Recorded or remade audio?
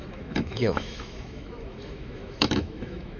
remade